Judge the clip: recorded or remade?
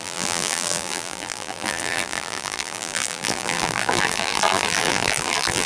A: remade